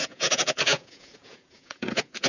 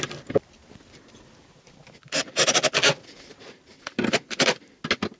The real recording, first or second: second